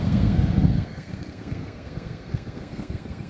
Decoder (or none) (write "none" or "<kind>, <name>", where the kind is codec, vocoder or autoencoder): codec, SNAC